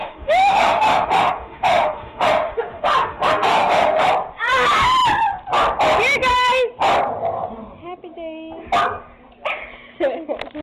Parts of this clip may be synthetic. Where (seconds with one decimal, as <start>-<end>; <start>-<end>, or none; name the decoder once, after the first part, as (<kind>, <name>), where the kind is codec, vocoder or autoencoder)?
0.0-4.1 (autoencoder, DAC-VAE)